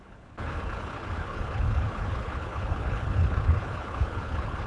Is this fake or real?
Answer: fake